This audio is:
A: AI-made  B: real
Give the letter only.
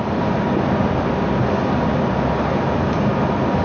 B